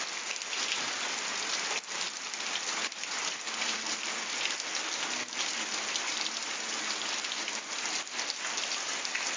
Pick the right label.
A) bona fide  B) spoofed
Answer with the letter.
A